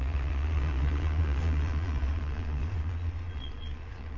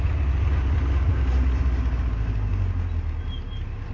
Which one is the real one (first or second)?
second